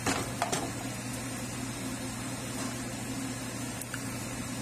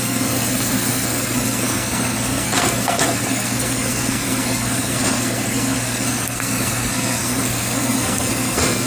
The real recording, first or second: first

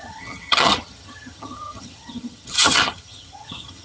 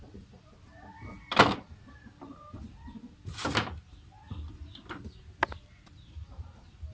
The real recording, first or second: second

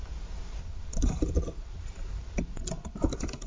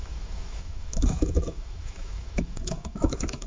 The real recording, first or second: first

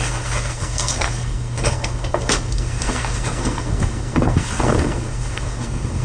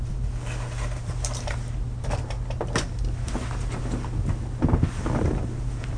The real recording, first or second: second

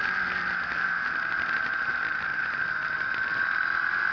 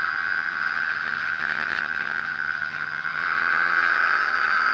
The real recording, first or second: first